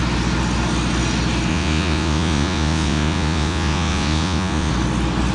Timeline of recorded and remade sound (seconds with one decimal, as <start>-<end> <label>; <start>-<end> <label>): 0.0-1.5 recorded; 1.5-4.7 remade; 4.7-5.3 recorded